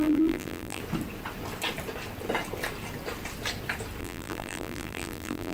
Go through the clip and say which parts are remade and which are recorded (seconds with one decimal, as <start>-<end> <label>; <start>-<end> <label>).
0.0-0.8 remade; 0.8-4.0 recorded; 4.0-5.5 remade